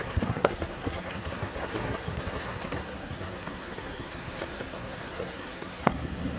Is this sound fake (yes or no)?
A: yes